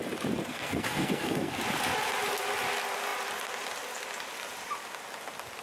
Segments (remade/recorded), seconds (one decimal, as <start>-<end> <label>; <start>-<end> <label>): 0.0-0.4 recorded; 0.4-1.5 remade; 1.5-5.6 recorded